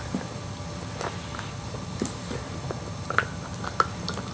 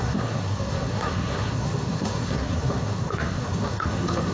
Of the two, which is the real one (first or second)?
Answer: first